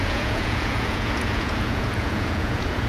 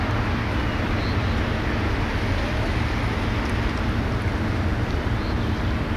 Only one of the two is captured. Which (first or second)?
second